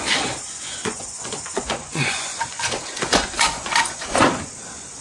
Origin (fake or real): fake